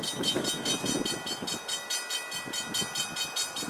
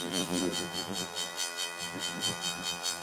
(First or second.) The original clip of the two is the first